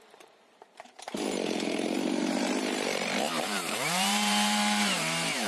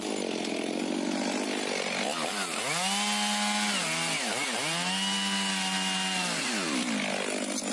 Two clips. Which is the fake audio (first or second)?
first